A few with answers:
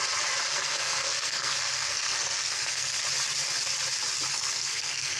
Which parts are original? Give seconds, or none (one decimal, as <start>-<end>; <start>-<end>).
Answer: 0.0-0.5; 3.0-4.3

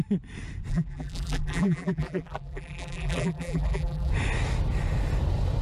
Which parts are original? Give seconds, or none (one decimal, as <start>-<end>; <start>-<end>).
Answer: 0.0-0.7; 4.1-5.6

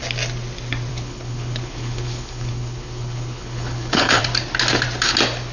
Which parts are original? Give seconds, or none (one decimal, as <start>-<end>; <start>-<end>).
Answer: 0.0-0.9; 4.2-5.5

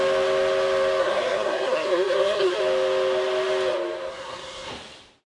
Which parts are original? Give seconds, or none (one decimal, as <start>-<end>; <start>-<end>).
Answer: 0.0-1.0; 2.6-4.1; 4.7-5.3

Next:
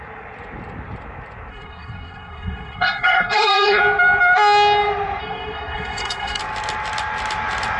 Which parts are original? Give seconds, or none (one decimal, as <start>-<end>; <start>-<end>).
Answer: 0.0-1.5; 3.8-5.2; 6.4-7.8

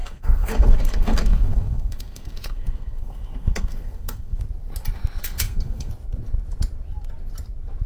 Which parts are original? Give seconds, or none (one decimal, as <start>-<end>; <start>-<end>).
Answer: 4.4-5.2; 5.9-7.9

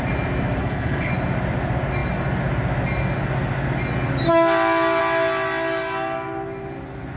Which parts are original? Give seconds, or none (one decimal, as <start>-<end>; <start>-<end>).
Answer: 0.0-0.6; 1.1-7.2